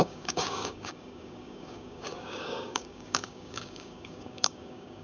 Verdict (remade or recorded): remade